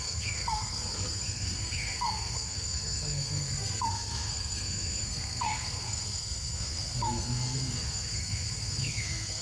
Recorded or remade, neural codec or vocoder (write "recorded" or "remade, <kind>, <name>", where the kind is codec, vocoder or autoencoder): remade, codec, SNAC